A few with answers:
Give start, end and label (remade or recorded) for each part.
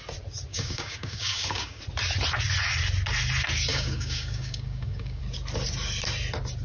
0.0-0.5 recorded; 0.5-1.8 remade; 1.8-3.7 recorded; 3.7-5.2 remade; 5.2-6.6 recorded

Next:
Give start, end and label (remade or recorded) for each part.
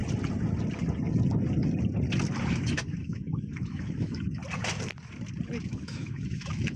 0.0-2.5 recorded; 2.5-4.4 remade; 4.4-5.7 recorded; 5.7-6.8 remade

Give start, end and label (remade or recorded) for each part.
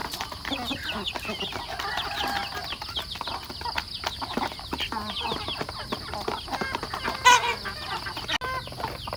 0.0-9.2 recorded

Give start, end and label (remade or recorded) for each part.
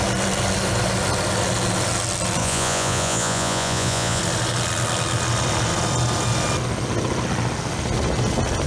0.0-2.4 recorded; 2.4-4.2 remade; 4.2-8.7 recorded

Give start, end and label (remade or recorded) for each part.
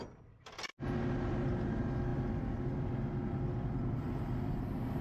0.0-5.0 recorded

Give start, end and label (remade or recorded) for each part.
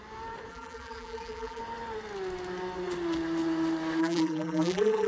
0.0-0.5 recorded; 0.5-1.6 remade; 1.6-4.0 recorded; 4.0-5.1 remade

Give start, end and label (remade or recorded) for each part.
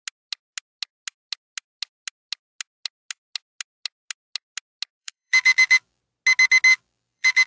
0.0-5.0 recorded; 5.0-6.0 remade; 6.0-6.7 recorded; 6.7-7.5 remade